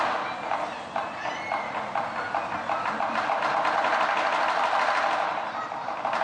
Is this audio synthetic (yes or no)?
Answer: no